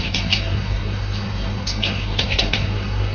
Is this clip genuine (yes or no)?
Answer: no